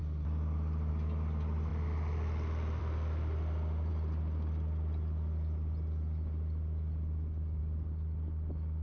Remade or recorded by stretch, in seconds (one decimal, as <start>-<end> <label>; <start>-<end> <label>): 0.0-8.8 recorded